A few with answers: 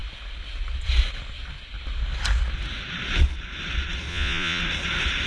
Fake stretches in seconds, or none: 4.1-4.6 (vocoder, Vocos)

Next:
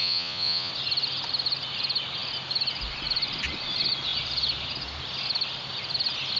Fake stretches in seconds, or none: 0.0-0.7 (vocoder, Vocos)

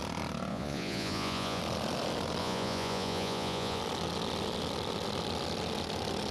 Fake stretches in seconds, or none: 0.5-1.6 (vocoder, Vocos); 2.4-3.8

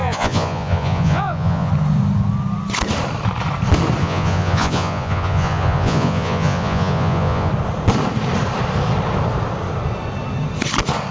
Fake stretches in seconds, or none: 0.0-1.7 (vocoder, Vocos); 4.0-7.5

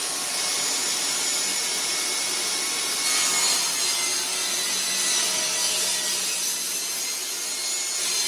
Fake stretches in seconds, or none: 4.3-4.9 (vocoder, Vocos)

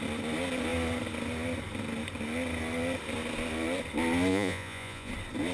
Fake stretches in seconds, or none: 4.3-5.1 (vocoder, Vocos)

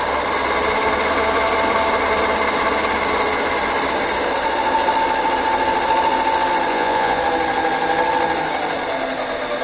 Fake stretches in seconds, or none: 6.7-7.2 (vocoder, Vocos)

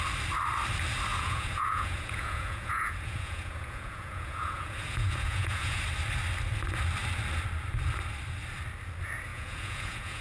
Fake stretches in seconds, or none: 1.1-5.8 (vocoder, Vocos); 9.3-10.2